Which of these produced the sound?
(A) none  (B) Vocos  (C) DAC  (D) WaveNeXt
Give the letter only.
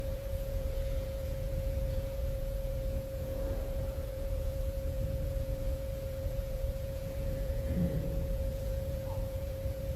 B